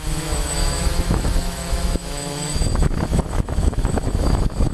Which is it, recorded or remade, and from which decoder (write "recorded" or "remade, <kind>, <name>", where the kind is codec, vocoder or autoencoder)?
remade, autoencoder, DAC-VAE